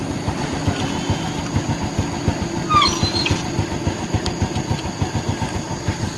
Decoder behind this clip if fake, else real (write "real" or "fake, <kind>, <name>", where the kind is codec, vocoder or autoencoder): real